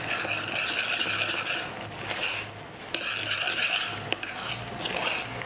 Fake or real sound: real